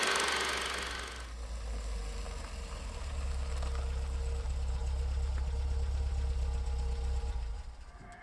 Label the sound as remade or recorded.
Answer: recorded